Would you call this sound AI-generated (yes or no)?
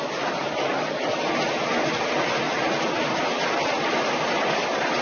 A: no